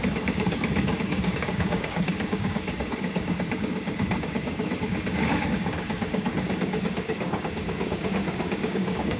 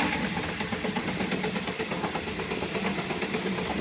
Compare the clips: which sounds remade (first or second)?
first